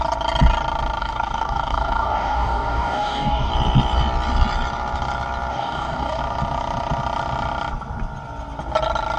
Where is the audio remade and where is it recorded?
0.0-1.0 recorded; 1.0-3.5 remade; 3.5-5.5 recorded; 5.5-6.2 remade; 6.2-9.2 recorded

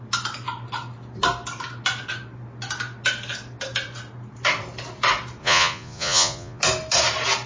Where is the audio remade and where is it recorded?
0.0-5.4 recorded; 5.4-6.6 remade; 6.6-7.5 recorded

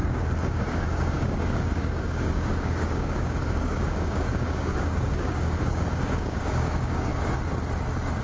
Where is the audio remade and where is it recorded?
0.0-7.1 remade; 7.1-8.2 recorded